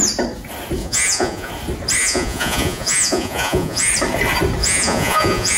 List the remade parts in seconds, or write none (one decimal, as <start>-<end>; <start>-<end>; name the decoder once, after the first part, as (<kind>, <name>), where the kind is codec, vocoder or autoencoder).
0.8-1.5 (vocoder, Vocos); 2.0-3.9; 4.6-5.6